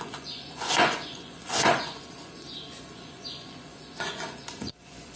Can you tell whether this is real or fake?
fake